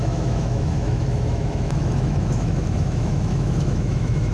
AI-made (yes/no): yes